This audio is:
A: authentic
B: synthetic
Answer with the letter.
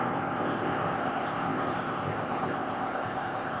B